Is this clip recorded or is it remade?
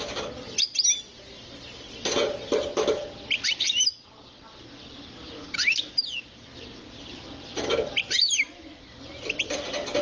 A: recorded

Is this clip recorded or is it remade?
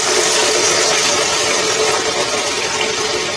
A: recorded